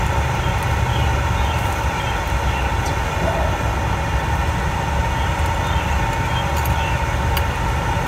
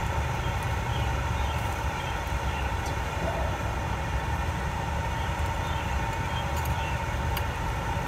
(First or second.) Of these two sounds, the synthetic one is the second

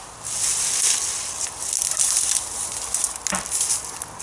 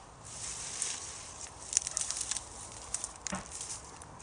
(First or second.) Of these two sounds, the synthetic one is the second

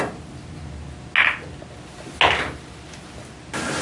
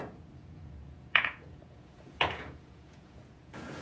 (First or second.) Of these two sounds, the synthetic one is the second